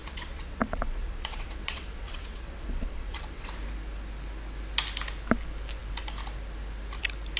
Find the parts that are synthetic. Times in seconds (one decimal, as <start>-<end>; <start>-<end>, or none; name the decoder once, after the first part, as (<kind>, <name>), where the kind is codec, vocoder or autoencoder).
0.0-3.5 (vocoder, WaveNeXt)